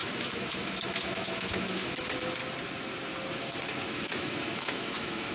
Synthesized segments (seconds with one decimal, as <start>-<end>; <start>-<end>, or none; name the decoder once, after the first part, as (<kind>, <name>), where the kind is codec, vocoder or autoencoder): 0.0-2.4 (autoencoder, DAC-VAE); 3.3-5.3